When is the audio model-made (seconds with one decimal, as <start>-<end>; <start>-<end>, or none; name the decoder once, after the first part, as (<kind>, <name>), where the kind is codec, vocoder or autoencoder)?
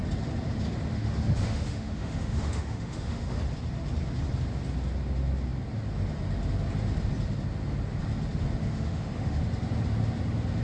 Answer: 0.9-3.4 (autoencoder, DAC-VAE); 8.6-9.4